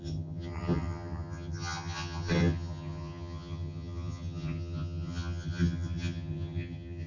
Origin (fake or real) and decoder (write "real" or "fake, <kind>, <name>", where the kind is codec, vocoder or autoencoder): fake, vocoder, HiFi-GAN